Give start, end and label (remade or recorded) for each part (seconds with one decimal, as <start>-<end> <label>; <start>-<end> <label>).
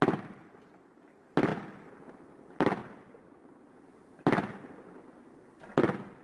0.0-6.2 recorded